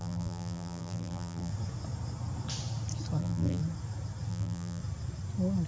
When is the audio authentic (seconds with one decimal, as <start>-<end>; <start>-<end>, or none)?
1.5-3.2; 3.6-4.3; 4.8-5.7